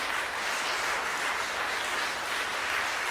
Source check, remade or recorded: recorded